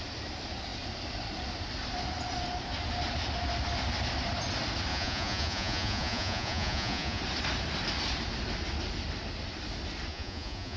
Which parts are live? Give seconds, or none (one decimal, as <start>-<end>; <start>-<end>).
0.0-4.9; 7.2-10.1